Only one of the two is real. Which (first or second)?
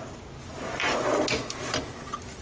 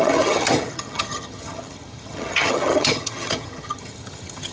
first